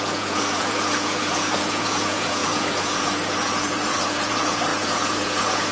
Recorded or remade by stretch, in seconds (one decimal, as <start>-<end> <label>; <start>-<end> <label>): 0.0-5.7 remade